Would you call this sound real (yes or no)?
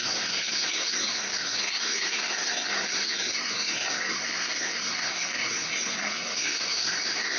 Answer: no